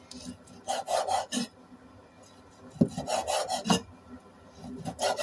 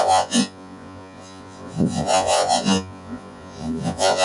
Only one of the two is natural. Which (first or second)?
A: first